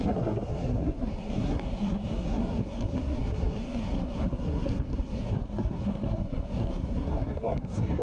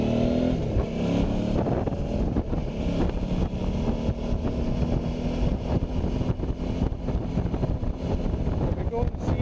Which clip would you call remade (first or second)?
first